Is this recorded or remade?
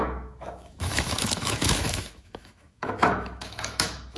remade